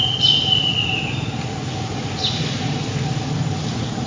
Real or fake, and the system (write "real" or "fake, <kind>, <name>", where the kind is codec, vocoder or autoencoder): real